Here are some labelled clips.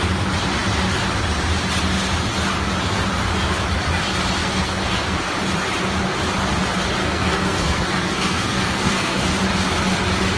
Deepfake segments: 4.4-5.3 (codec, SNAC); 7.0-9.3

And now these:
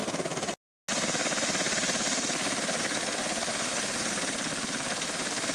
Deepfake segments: none